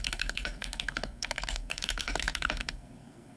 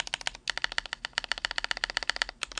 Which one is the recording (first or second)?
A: second